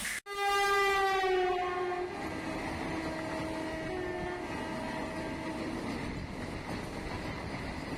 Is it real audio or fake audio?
real